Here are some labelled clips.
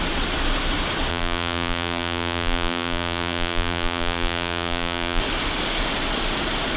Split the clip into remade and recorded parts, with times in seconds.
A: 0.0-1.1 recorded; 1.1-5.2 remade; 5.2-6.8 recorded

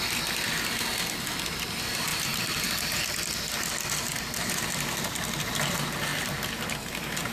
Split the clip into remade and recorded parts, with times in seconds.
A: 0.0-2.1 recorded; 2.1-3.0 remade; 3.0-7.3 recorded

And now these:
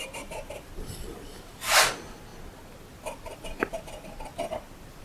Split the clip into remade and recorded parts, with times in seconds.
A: 0.0-5.0 recorded

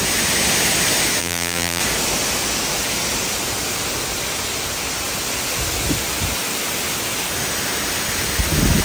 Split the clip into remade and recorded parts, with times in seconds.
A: 0.0-1.2 recorded; 1.2-1.8 remade; 1.8-8.8 recorded